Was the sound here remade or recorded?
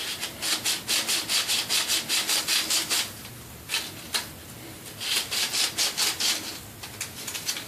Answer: recorded